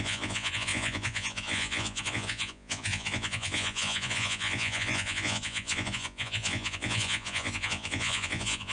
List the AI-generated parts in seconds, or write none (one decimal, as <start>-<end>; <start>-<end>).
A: 0.0-8.7